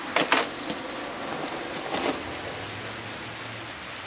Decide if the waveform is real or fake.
real